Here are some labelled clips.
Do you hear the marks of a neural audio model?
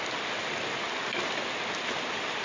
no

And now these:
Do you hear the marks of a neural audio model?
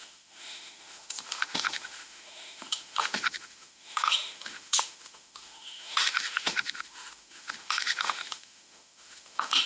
yes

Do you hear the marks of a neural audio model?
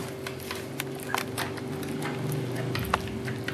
no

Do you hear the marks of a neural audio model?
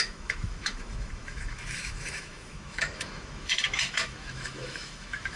yes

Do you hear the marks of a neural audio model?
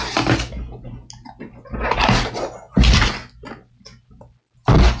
no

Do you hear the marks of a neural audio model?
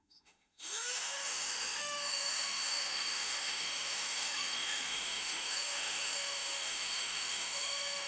yes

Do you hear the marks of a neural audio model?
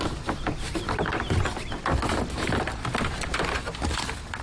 no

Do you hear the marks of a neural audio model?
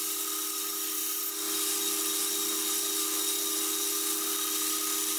no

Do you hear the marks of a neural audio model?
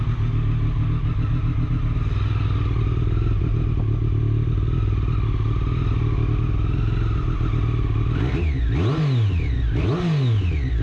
no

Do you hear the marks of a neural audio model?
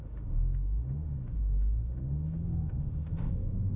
yes